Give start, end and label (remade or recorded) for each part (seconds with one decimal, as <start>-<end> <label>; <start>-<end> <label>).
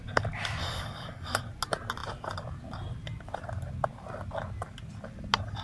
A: 0.0-0.6 recorded; 0.6-1.4 remade; 1.4-5.6 recorded